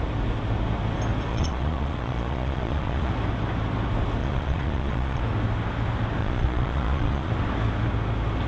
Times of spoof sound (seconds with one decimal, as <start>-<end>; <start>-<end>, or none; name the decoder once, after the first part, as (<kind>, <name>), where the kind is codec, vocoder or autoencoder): 1.3-3.1 (vocoder, Vocos); 4.2-5.2; 6.2-7.3